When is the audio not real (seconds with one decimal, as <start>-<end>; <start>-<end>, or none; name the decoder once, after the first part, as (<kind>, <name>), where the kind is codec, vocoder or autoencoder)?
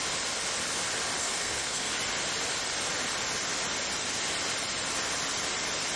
1.2-1.9 (codec, SNAC)